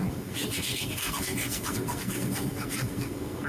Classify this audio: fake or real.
fake